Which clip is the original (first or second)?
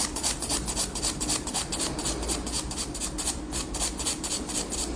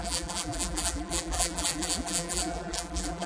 first